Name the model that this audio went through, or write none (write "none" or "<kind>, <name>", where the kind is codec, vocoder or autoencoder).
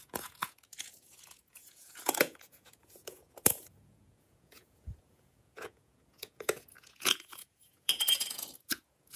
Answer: vocoder, Vocos